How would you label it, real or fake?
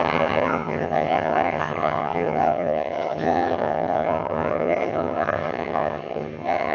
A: fake